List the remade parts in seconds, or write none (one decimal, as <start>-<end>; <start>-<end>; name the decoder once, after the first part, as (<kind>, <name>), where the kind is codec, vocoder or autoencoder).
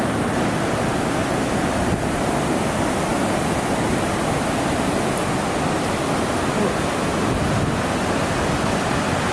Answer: none